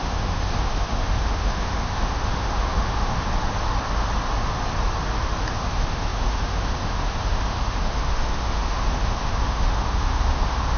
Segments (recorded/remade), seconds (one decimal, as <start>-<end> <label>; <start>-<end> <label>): 0.0-3.3 remade; 3.3-5.5 recorded; 5.5-10.8 remade